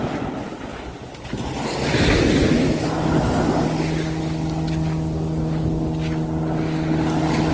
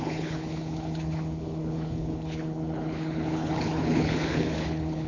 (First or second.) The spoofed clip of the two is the second